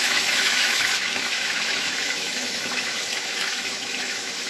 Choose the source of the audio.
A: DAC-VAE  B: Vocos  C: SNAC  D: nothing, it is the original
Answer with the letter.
A